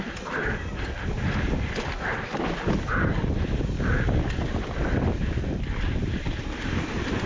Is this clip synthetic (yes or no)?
no